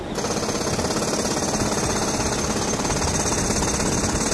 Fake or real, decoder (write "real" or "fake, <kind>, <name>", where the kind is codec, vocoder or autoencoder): real